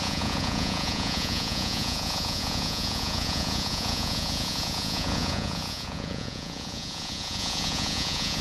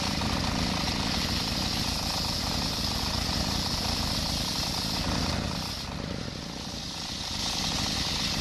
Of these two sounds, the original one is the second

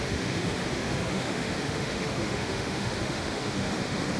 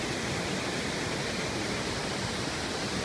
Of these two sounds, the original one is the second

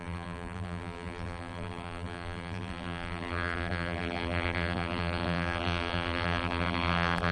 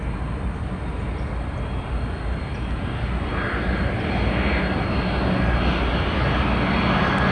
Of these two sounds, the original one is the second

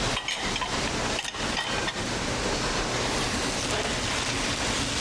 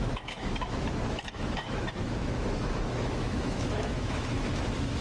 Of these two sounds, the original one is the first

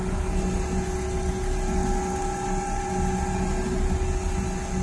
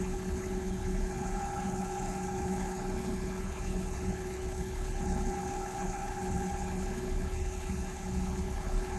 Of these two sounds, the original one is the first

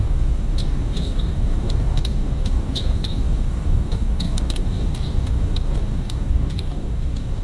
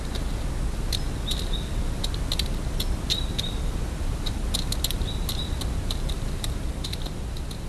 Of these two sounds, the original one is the second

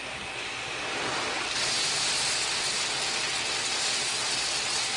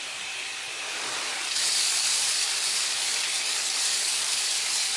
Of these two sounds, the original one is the first